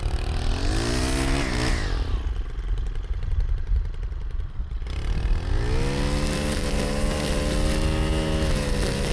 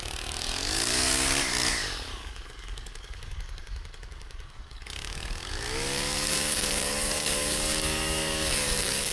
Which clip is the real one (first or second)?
first